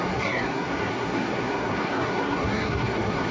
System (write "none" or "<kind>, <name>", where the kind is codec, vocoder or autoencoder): codec, SNAC